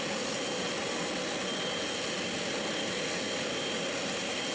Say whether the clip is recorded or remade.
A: recorded